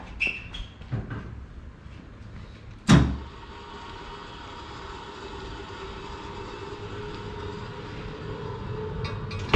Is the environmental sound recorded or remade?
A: recorded